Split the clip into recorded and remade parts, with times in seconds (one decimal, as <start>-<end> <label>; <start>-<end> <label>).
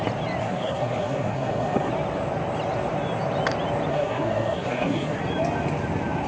0.0-0.4 recorded; 0.4-1.9 remade; 1.9-3.9 recorded; 3.9-5.2 remade; 5.2-6.3 recorded